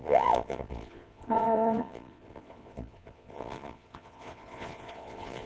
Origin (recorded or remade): remade